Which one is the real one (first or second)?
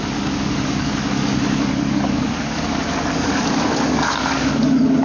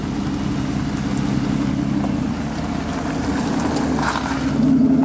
second